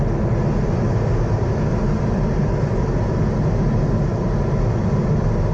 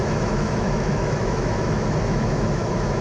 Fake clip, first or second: second